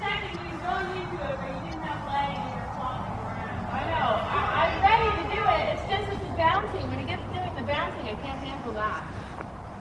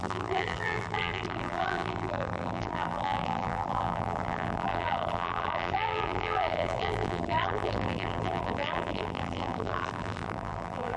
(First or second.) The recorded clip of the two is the first